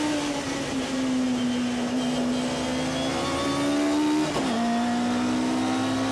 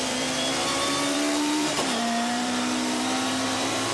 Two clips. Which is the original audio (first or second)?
first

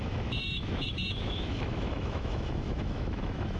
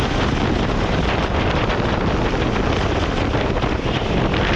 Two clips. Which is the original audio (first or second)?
second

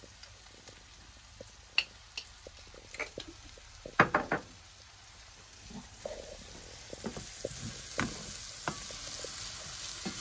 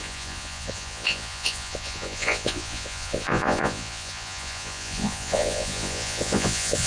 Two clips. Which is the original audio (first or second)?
first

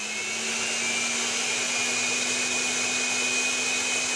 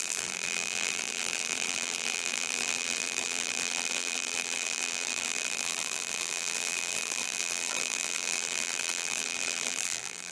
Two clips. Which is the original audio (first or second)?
first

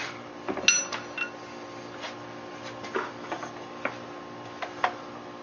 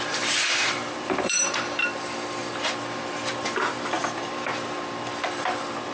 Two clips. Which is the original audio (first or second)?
first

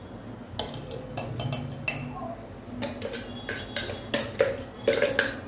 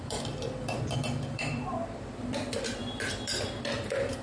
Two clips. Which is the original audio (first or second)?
first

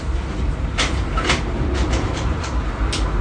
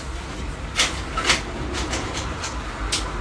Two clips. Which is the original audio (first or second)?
second